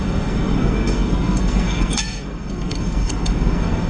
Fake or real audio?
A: fake